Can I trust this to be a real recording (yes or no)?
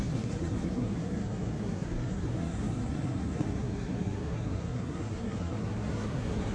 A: no